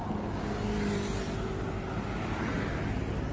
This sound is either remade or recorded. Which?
recorded